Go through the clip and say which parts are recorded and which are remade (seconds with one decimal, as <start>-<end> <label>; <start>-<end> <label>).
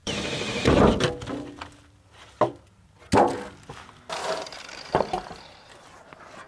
0.0-0.7 remade; 0.7-4.2 recorded; 4.2-6.0 remade; 6.0-6.5 recorded